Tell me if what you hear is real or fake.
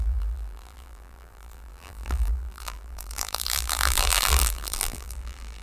fake